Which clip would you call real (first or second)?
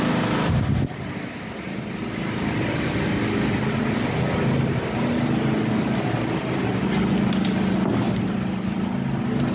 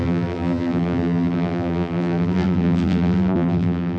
first